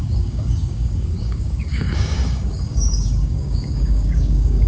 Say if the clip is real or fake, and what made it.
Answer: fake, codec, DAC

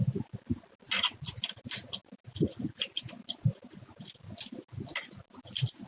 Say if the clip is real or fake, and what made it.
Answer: real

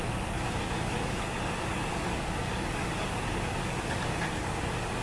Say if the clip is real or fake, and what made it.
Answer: fake, codec, DAC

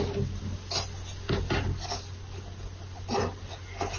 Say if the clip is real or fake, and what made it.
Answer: real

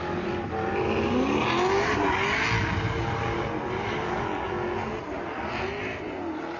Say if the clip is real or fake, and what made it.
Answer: real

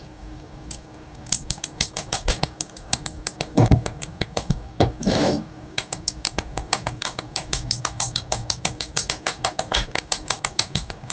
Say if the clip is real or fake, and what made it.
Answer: fake, codec, DAC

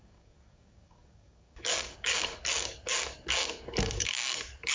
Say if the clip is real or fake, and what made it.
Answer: fake, codec, DAC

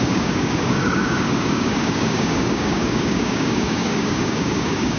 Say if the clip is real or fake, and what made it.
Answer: fake, codec, DAC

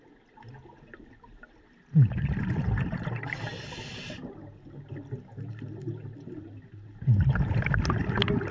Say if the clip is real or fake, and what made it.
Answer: real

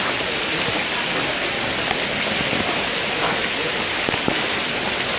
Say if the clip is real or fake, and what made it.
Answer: real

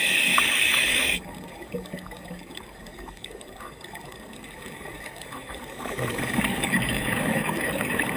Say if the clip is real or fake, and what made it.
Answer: fake, codec, DAC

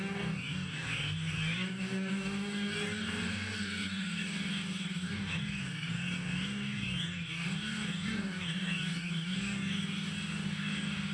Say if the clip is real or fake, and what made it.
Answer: fake, codec, DAC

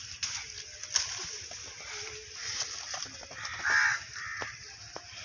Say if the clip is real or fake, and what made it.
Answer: real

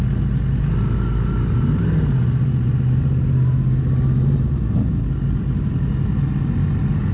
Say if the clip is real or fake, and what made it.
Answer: real